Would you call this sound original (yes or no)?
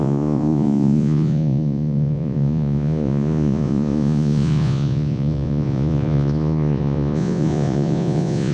no